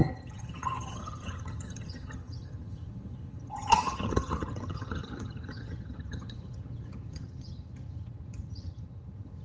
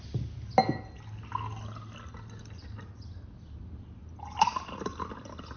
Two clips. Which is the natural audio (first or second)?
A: second